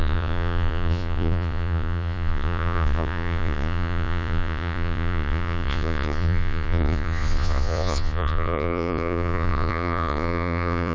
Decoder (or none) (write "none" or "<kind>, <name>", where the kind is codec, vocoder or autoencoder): vocoder, Vocos